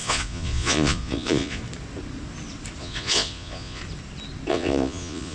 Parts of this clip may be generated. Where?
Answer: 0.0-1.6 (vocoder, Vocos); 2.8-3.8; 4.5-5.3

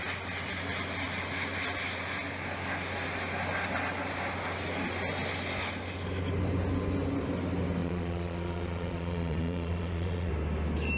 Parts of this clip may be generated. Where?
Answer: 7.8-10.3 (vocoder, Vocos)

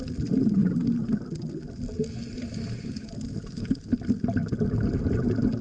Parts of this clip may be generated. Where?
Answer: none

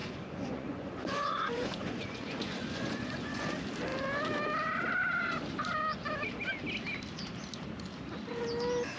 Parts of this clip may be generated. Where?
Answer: 0.0-3.5 (vocoder, Vocos)

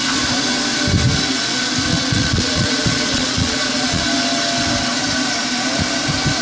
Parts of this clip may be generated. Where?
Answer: 1.9-4.0 (vocoder, Vocos)

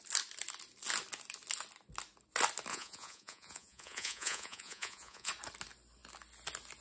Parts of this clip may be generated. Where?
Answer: 2.7-5.3 (vocoder, Vocos)

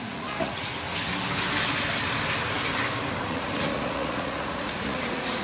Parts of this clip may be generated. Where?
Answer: 0.0-0.7 (vocoder, Vocos); 3.2-5.4